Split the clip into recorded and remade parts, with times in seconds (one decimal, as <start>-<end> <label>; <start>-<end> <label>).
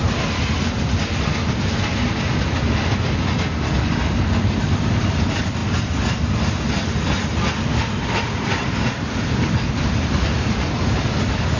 0.0-11.6 recorded